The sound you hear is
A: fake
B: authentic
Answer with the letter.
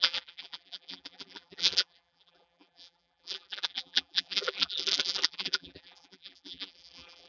A